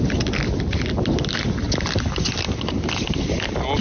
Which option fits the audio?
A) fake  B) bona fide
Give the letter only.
B